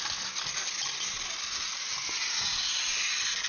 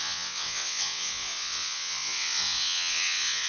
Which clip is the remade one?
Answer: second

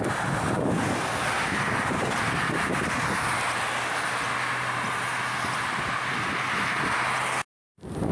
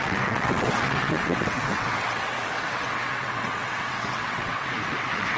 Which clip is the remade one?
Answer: second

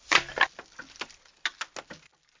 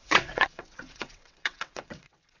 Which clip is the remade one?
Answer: second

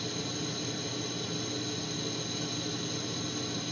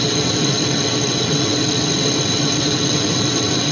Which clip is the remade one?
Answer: second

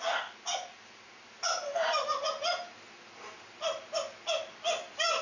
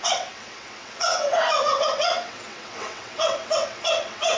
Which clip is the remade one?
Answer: second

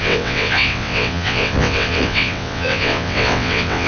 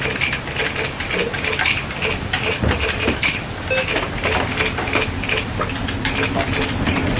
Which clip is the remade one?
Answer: first